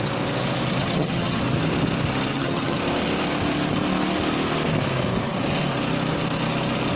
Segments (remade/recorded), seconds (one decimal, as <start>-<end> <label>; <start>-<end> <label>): 0.0-0.8 recorded; 0.8-1.4 remade; 1.4-2.3 recorded; 2.3-2.8 remade; 2.8-7.0 recorded